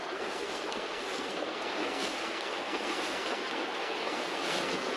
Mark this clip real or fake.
fake